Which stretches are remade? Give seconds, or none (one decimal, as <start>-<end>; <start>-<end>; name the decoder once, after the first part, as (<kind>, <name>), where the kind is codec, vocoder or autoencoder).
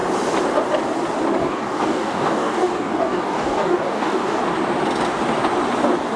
1.4-4.4 (codec, DAC)